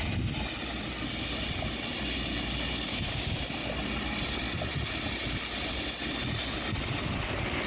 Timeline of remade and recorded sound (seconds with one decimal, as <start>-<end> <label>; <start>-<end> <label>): 0.0-2.9 recorded; 2.9-3.4 remade; 3.4-7.7 recorded